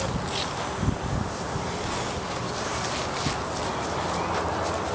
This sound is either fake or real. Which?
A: real